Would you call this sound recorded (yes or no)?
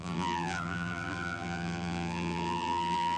no